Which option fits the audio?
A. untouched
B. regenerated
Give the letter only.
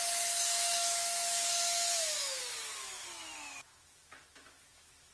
B